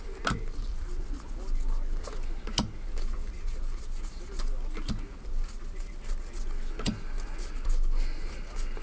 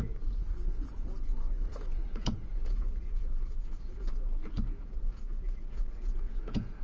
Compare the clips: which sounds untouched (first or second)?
first